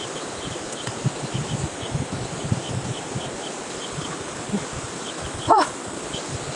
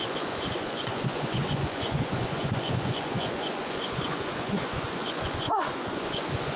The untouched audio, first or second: first